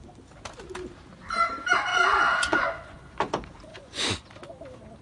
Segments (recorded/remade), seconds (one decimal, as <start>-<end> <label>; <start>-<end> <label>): 0.0-1.9 recorded; 1.9-3.2 remade; 3.2-3.7 recorded; 3.7-4.3 remade; 4.3-5.0 recorded